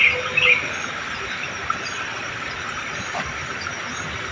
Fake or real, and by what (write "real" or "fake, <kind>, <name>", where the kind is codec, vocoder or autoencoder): real